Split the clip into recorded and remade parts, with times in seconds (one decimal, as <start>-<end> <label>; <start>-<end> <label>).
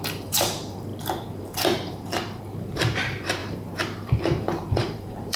0.0-5.4 remade